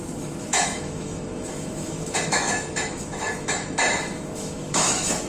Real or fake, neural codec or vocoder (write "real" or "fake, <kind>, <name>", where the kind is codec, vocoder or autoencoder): fake, autoencoder, DAC-VAE